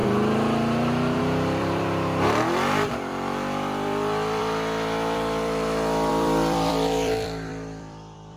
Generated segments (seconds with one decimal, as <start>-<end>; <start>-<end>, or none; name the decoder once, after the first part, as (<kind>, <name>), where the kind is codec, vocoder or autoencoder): 0.0-8.4 (vocoder, BigVGAN v2)